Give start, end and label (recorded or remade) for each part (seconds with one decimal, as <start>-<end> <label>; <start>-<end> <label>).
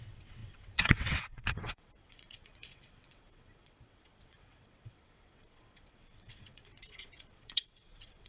0.0-8.3 remade